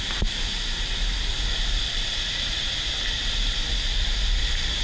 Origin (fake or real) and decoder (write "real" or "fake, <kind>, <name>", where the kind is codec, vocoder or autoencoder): real